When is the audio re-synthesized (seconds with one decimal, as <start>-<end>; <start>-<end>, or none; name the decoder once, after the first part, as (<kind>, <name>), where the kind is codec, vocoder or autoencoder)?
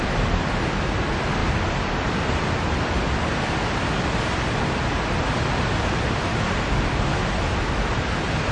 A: none